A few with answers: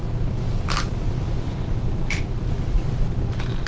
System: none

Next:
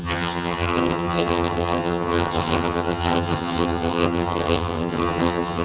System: vocoder, HiFi-GAN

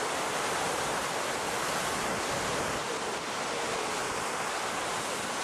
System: none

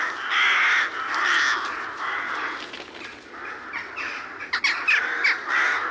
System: none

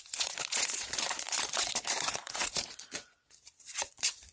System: vocoder, Vocos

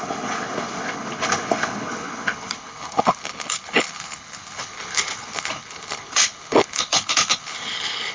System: codec, HILCodec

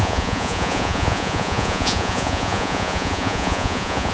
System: vocoder, Vocos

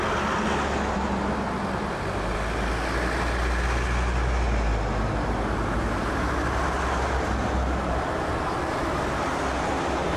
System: none